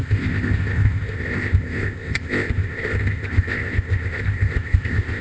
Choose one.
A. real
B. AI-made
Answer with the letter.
B